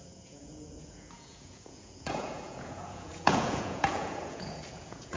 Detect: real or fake fake